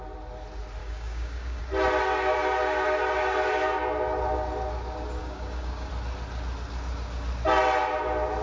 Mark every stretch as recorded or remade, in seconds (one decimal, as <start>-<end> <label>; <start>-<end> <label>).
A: 0.0-0.8 recorded; 0.8-1.6 remade; 1.6-5.2 recorded; 5.2-5.9 remade; 5.9-8.4 recorded

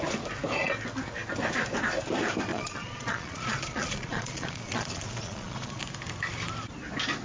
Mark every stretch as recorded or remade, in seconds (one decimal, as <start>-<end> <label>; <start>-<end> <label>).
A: 0.0-2.5 recorded; 2.5-5.8 remade; 5.8-7.2 recorded